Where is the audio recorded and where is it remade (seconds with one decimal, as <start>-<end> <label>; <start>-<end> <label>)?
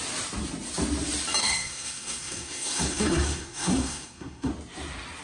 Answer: 0.0-1.4 recorded; 1.4-4.5 remade; 4.5-5.2 recorded